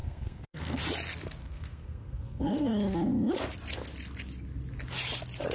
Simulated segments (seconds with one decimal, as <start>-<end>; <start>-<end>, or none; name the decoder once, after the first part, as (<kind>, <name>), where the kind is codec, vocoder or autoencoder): 0.0-0.8 (codec, SNAC); 1.4-2.7